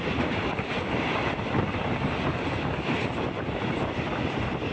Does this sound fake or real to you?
real